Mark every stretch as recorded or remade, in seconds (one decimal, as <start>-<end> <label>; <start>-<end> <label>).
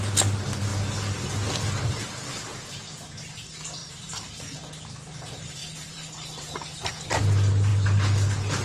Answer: 0.0-3.8 recorded; 3.8-4.3 remade; 4.3-5.6 recorded; 5.6-6.9 remade; 6.9-8.6 recorded